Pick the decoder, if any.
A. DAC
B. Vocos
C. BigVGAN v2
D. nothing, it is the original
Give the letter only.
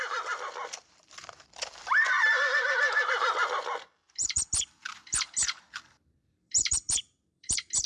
C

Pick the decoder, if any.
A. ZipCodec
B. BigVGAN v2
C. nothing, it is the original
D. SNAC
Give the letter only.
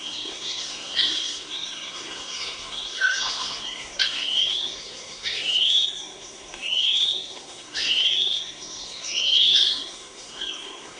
D